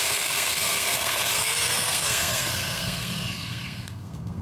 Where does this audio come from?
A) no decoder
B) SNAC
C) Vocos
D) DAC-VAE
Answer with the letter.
B